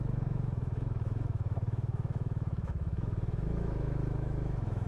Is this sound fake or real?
fake